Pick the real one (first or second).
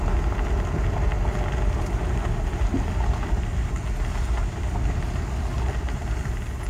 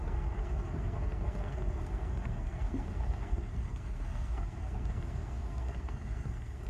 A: first